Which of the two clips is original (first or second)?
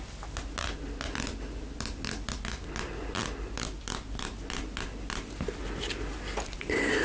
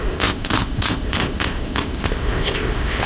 first